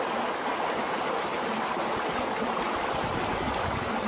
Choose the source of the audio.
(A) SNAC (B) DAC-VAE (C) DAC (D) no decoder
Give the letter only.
D